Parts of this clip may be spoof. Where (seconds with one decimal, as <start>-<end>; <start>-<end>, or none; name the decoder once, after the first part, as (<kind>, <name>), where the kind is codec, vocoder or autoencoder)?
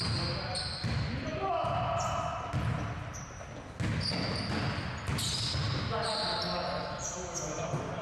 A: none